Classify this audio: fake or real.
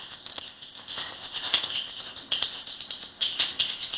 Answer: fake